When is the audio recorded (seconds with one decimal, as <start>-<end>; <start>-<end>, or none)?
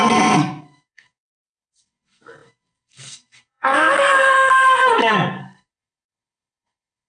none